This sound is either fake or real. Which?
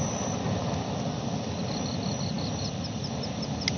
real